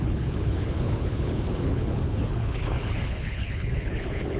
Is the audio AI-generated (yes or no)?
yes